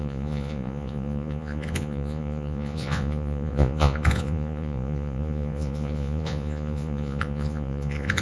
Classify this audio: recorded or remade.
remade